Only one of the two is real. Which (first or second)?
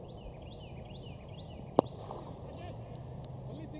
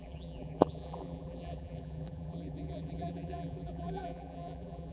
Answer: first